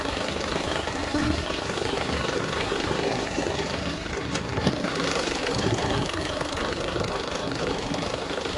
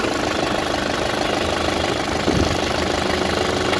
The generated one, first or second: first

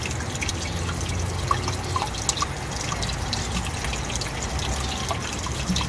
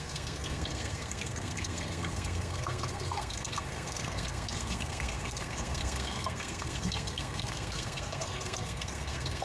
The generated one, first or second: second